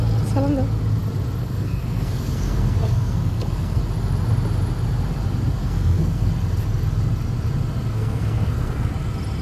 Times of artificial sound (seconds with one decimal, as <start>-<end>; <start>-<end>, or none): 1.4-3.8; 5.6-6.3; 7.9-8.9